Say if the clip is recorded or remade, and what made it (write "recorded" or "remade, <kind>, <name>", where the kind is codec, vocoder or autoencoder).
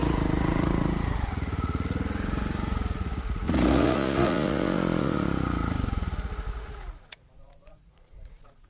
remade, vocoder, Vocos